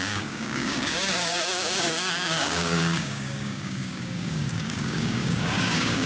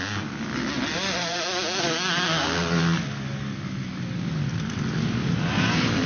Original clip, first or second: second